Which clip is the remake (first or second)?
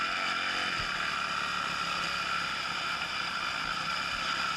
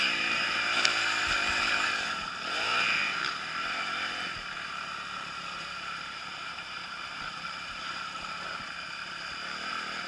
second